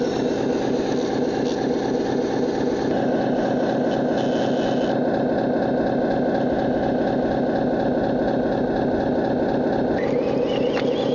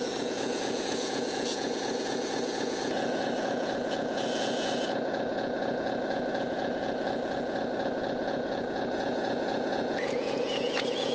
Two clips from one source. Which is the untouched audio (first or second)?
first